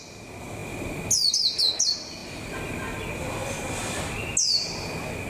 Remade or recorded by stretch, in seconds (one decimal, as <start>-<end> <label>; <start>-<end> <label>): 0.0-5.3 recorded